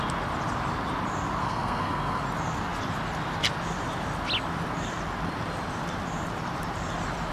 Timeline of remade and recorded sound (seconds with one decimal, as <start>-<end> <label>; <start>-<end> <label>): 0.0-1.4 recorded; 1.4-2.2 remade; 2.2-7.3 recorded